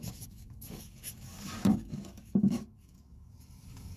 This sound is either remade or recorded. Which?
remade